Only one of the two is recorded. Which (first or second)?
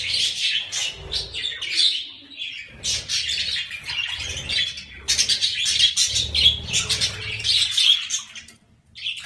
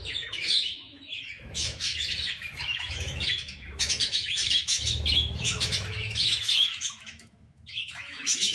first